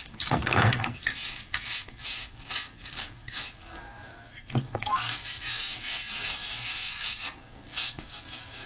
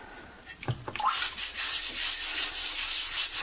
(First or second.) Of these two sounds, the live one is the second